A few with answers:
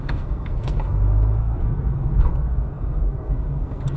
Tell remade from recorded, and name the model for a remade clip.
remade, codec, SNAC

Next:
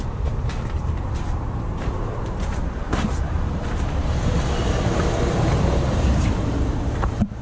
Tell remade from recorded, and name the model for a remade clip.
remade, vocoder, BigVGAN v2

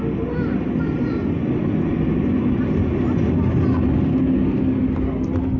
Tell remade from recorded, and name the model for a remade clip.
recorded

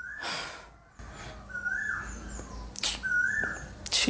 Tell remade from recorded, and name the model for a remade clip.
recorded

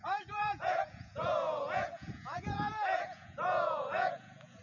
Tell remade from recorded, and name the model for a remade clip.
remade, vocoder, Vocos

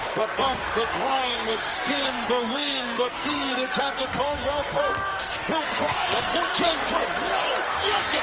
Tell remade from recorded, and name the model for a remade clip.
remade, codec, SNAC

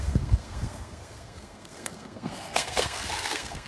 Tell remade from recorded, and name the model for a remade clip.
remade, codec, SNAC